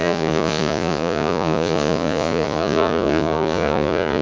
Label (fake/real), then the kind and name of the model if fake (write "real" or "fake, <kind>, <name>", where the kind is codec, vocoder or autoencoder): fake, vocoder, Vocos